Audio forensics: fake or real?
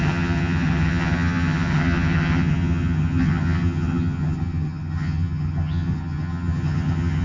fake